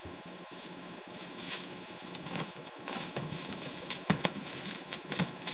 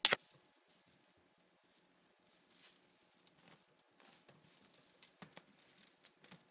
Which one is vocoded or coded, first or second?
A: first